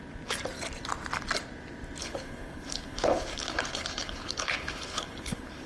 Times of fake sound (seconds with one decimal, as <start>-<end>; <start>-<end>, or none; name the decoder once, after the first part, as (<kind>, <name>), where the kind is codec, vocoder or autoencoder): 2.0-5.7 (codec, HILCodec)